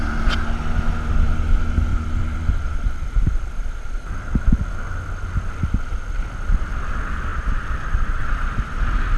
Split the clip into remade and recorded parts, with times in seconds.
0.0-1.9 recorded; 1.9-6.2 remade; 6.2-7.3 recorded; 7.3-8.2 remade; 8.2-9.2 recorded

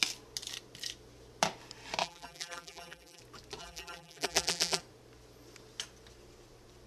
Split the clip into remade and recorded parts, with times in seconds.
0.0-2.0 recorded; 2.0-3.2 remade; 3.2-3.6 recorded; 3.6-4.8 remade; 4.8-6.9 recorded

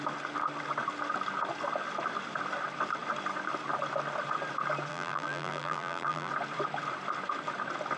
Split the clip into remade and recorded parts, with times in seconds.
0.0-4.9 recorded; 4.9-6.3 remade; 6.3-8.0 recorded

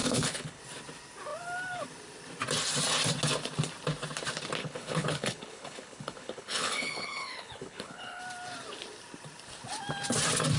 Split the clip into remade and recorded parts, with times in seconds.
0.0-0.6 remade; 0.6-4.6 recorded; 4.6-8.2 remade; 8.2-10.6 recorded

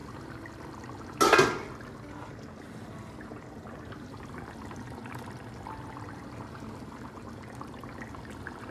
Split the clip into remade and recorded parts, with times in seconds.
0.0-8.7 recorded